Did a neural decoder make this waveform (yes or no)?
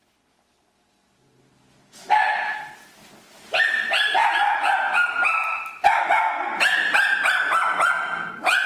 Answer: no